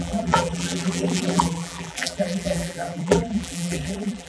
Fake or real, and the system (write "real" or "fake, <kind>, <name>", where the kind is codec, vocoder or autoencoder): fake, vocoder, BigVGAN v2